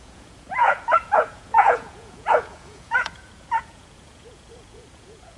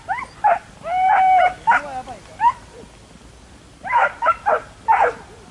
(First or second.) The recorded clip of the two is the second